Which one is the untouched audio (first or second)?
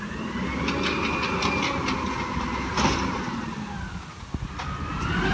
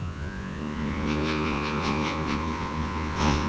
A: first